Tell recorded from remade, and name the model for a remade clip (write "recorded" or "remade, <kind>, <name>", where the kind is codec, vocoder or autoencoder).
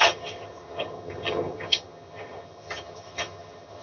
remade, vocoder, HiFi-GAN